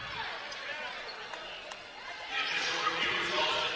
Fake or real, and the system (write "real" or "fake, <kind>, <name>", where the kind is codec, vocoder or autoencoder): fake, vocoder, Vocos